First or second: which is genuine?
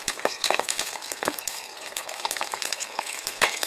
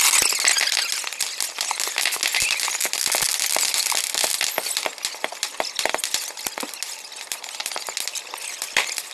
second